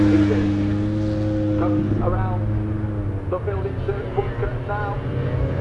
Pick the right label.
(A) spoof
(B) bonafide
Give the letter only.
B